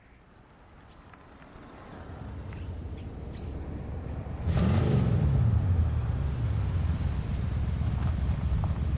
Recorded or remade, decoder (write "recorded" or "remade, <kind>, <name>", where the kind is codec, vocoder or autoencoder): recorded